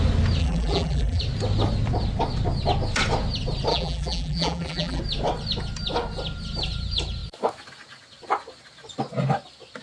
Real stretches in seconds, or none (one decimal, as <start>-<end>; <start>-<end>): 0.0-0.4; 1.2-3.7; 5.0-9.8